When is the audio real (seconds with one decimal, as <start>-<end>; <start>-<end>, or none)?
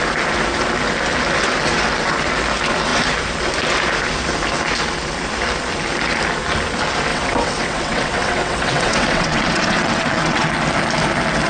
0.0-7.1; 10.5-11.5